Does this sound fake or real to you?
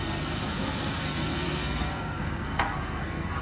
fake